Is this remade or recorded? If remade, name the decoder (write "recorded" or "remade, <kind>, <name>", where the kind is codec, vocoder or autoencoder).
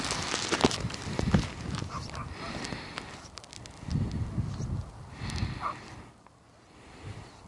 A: recorded